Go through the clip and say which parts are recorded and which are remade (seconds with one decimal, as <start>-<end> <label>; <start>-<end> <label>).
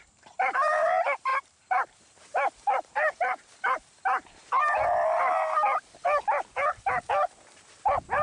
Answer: 0.0-4.4 remade; 4.4-6.5 recorded; 6.5-8.2 remade